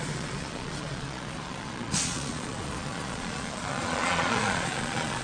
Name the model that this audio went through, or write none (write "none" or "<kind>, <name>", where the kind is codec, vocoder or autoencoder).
vocoder, Vocos